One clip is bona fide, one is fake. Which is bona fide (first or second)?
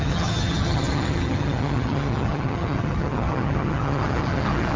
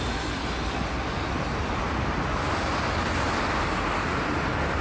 second